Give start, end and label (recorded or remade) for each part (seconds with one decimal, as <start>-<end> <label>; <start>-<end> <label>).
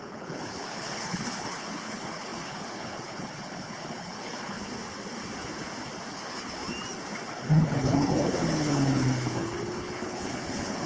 0.0-4.7 remade; 4.7-6.1 recorded; 6.1-6.6 remade; 6.6-7.3 recorded; 7.3-10.9 remade